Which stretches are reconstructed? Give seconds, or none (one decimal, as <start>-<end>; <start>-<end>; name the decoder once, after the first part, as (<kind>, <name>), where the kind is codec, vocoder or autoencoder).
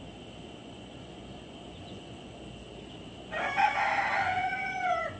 0.6-2.4 (vocoder, Vocos); 4.4-5.2